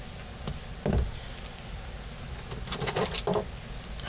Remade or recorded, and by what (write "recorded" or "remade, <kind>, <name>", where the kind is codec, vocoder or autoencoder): recorded